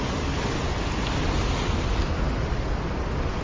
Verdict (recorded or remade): recorded